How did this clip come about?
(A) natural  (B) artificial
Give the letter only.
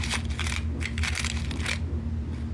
A